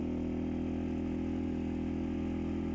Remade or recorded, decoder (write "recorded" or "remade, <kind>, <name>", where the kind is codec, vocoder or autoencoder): recorded